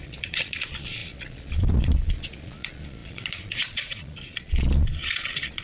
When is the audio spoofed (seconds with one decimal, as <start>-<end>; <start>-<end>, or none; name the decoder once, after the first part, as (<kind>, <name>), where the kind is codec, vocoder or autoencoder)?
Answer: 0.0-5.6 (vocoder, Vocos)